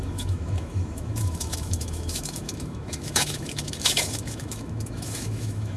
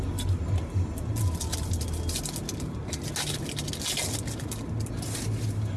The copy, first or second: first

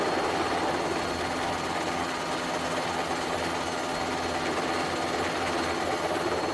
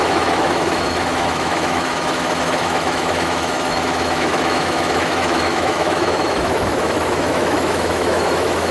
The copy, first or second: second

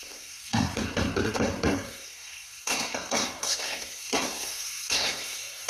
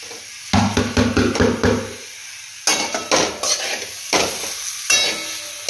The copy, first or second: first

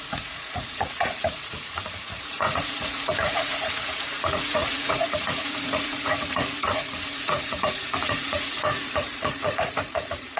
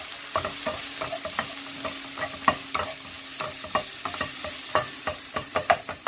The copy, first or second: first